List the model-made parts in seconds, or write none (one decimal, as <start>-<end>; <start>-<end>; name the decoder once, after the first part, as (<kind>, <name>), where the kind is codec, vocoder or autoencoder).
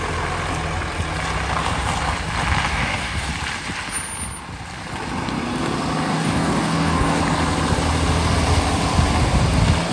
2.7-3.3 (codec, DAC); 6.1-7.2